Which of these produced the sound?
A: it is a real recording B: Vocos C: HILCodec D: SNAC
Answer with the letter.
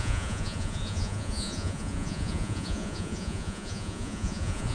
B